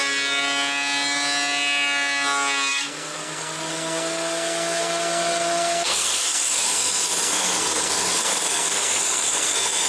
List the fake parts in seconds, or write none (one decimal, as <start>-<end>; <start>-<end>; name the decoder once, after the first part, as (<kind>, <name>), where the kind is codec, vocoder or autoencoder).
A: 2.7-9.9 (codec, SNAC)